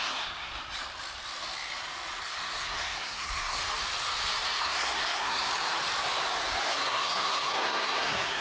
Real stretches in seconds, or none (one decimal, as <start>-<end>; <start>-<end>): 0.5-2.2; 3.6-4.6; 5.5-6.7